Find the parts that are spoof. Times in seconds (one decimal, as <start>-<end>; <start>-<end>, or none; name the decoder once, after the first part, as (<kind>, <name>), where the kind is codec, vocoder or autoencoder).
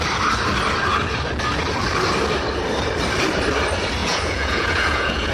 4.0-5.3 (vocoder, Vocos)